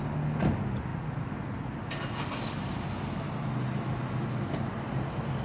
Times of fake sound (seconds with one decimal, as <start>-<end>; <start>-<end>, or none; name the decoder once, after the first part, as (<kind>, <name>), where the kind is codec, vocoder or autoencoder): none